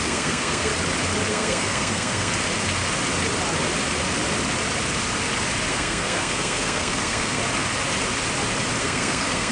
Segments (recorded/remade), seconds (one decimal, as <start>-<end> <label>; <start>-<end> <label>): 0.0-0.7 remade; 0.7-1.3 recorded; 1.3-2.3 remade; 2.3-5.7 recorded; 5.7-7.4 remade; 7.4-8.8 recorded; 8.8-9.5 remade